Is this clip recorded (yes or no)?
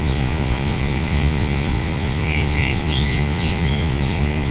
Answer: no